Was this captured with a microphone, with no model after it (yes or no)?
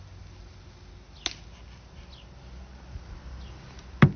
yes